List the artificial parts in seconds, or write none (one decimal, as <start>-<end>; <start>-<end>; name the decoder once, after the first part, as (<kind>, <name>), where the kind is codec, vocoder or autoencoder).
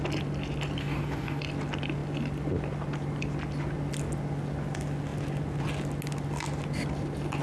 0.8-1.4 (codec, DAC)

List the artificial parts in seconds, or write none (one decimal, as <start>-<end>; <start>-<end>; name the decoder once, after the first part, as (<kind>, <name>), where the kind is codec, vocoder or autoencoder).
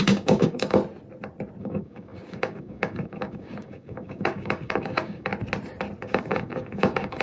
0.0-0.8 (codec, DAC); 1.6-5.3; 6.0-7.2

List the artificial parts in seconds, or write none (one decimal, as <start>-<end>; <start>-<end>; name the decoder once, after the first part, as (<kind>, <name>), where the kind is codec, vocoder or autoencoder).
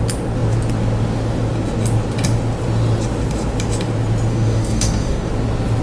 4.3-5.3 (codec, DAC)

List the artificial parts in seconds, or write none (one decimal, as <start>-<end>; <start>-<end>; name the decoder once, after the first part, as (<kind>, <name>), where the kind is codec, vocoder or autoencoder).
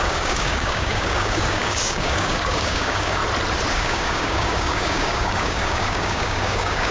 0.0-3.2 (codec, DAC); 3.7-6.9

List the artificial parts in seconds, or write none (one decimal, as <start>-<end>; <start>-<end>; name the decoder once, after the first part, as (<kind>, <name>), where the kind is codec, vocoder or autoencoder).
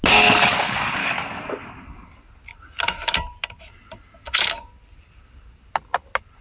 1.0-1.5 (codec, DAC); 4.2-4.7